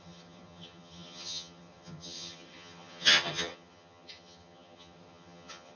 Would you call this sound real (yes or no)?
no